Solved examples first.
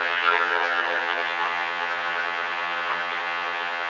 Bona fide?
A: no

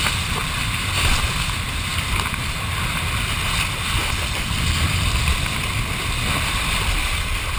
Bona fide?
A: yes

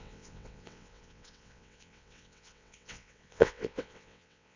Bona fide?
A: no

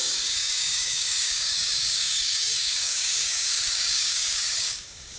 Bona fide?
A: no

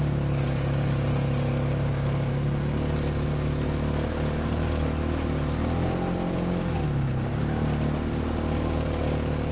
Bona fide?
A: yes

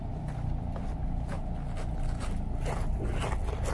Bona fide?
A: yes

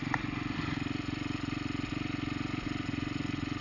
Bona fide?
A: yes